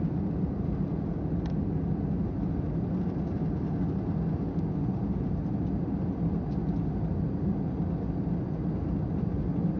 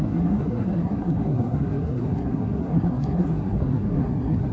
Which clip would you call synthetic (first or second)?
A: second